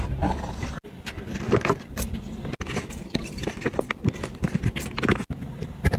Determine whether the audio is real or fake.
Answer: real